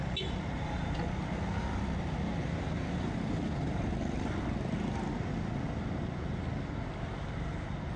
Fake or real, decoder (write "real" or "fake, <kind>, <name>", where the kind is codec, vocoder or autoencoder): real